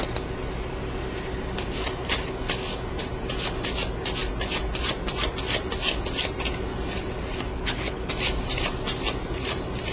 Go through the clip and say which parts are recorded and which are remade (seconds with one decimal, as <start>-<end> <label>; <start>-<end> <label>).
0.0-7.5 recorded; 7.5-8.1 remade; 8.1-9.9 recorded